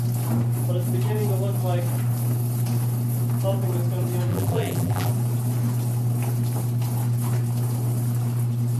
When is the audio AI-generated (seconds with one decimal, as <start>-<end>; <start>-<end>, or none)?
4.3-5.1